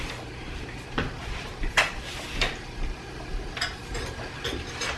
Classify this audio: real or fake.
fake